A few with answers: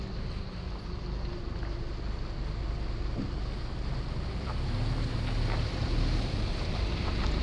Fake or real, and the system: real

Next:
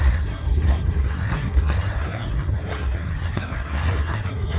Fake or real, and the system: fake, codec, SNAC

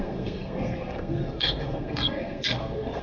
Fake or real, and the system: fake, codec, SNAC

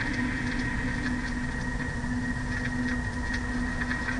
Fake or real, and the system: real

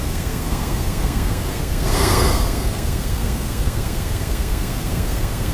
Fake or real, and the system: fake, codec, SNAC